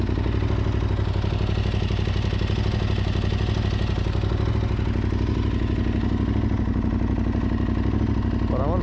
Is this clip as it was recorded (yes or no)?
yes